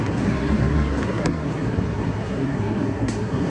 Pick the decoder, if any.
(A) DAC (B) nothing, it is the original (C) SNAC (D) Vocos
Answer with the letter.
C